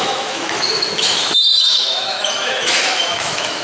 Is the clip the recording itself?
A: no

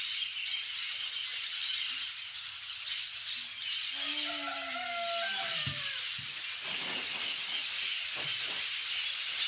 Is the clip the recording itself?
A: yes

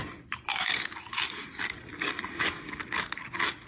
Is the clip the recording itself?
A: yes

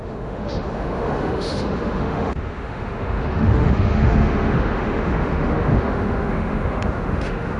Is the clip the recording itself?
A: no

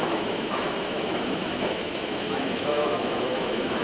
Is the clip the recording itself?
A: no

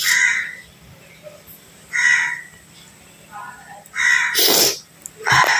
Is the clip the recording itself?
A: yes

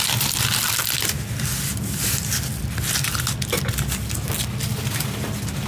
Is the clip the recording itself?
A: yes